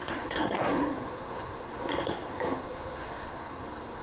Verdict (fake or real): fake